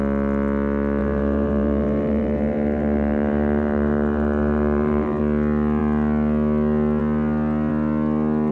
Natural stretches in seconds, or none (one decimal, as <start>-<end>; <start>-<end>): 0.0-1.0; 5.2-8.5